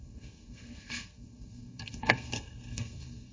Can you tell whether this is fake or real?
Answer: fake